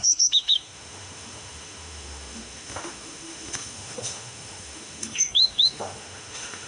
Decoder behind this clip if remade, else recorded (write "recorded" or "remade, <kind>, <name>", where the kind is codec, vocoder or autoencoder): remade, autoencoder, DAC-VAE